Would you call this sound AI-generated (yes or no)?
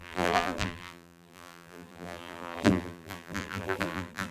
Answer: yes